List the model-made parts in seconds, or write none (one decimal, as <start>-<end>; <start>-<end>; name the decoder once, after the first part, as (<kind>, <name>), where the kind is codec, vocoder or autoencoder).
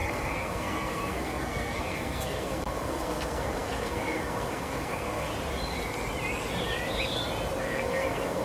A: 0.0-5.3 (codec, SNAC); 7.6-8.4